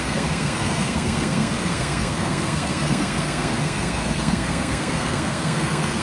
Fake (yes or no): yes